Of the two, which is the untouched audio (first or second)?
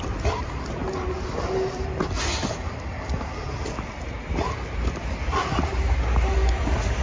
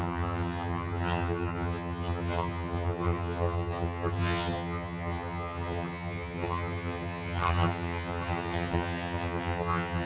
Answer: first